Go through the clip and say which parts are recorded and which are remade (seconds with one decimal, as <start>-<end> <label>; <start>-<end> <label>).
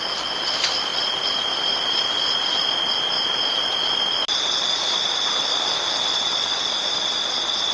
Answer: 0.0-7.7 remade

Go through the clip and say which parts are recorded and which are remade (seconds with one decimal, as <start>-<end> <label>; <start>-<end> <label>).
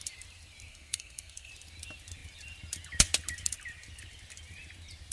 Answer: 0.0-0.7 recorded; 0.7-1.5 remade; 1.5-5.1 recorded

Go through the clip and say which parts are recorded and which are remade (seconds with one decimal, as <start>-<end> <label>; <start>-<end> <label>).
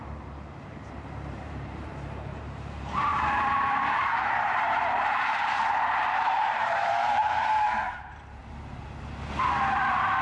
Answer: 0.0-0.6 recorded; 0.6-8.4 remade; 8.4-10.2 recorded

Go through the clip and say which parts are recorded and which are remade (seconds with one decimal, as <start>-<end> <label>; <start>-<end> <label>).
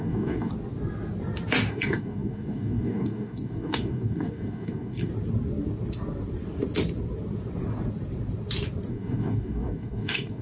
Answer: 0.0-0.5 remade; 0.5-1.7 recorded; 1.7-5.1 remade; 5.1-8.9 recorded; 8.9-10.4 remade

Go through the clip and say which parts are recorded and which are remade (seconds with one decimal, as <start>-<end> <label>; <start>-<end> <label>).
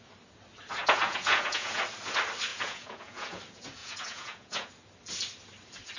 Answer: 0.0-0.8 recorded; 0.8-1.8 remade; 1.8-2.5 recorded; 2.5-3.4 remade; 3.4-3.8 recorded; 3.8-4.7 remade; 4.7-6.0 recorded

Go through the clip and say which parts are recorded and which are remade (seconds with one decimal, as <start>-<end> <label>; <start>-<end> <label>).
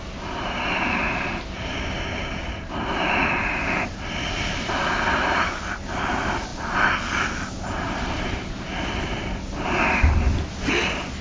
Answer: 0.0-11.2 recorded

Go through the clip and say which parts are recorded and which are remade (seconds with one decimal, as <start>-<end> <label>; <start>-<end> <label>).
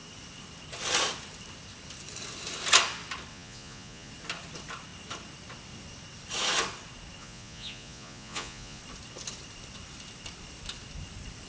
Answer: 0.0-3.3 recorded; 3.3-4.1 remade; 4.1-7.2 recorded; 7.2-8.8 remade; 8.8-11.5 recorded